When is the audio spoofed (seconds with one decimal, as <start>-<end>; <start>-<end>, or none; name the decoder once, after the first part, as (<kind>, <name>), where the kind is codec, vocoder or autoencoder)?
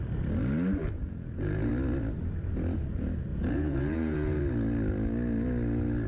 0.8-1.7 (vocoder, Vocos); 3.3-4.4